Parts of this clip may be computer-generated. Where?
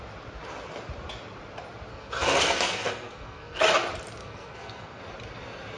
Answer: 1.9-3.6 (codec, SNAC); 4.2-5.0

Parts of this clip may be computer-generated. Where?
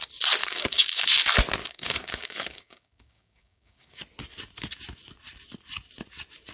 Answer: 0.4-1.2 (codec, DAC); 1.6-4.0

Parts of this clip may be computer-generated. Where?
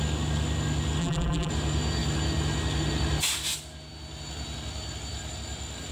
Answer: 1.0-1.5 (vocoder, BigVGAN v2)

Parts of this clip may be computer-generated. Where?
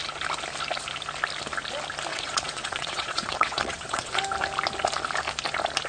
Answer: 2.1-4.2 (vocoder, WaveNeXt)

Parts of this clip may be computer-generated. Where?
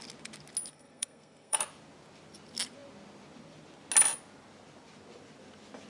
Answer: 0.7-1.6 (codec, SNAC)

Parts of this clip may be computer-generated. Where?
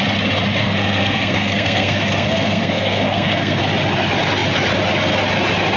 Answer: 0.6-3.6 (codec, SNAC)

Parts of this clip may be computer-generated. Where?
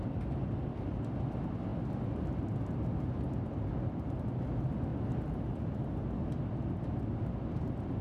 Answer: none